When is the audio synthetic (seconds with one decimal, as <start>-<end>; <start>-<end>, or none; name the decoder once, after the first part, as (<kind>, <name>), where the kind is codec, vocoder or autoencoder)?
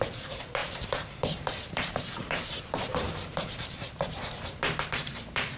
0.0-5.6 (vocoder, BigVGAN v2)